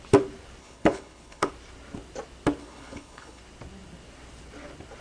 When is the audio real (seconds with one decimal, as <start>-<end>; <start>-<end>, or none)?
0.0-0.6; 1.5-2.6; 3.4-5.0